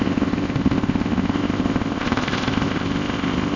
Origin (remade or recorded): remade